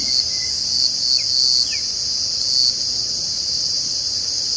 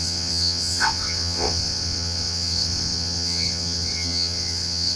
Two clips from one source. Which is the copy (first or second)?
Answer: second